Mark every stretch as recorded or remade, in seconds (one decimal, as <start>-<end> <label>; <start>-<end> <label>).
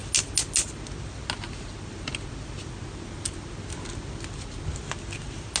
0.0-5.6 recorded